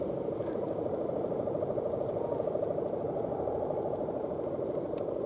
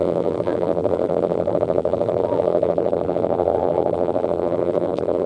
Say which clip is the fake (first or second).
second